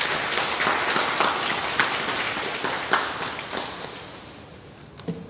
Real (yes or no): yes